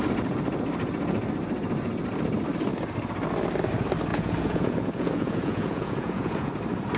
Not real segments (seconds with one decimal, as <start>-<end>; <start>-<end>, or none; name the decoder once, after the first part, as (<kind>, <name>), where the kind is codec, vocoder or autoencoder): 4.1-6.5 (vocoder, Vocos)